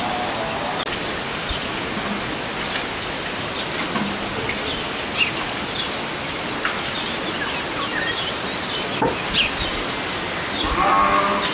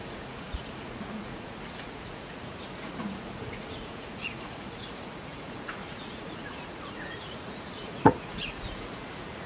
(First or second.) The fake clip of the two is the second